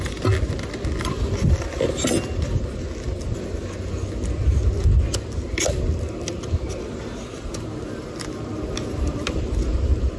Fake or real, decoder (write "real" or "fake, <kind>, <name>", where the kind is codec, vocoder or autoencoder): real